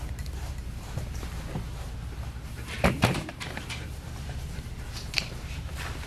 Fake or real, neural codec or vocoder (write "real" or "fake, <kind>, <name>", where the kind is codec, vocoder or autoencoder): fake, vocoder, BigVGAN v2